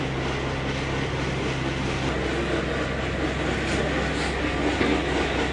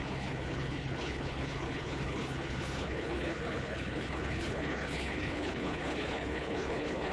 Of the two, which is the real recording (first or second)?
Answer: first